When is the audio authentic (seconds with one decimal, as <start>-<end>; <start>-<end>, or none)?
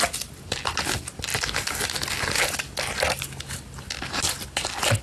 0.0-5.0